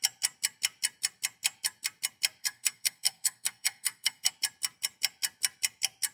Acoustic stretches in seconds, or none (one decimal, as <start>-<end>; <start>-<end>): 0.0-2.4; 4.3-6.1